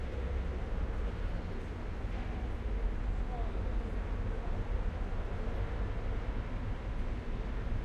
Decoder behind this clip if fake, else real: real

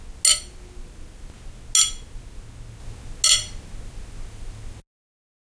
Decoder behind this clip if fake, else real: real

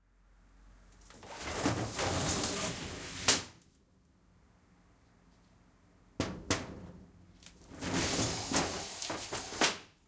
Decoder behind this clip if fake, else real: real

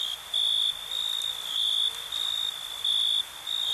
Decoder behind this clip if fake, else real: real